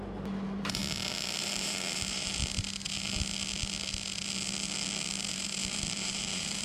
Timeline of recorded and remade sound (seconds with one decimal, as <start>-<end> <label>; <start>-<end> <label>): 0.0-0.8 remade; 0.8-1.4 recorded; 1.4-2.4 remade; 2.4-5.3 recorded; 5.3-6.6 remade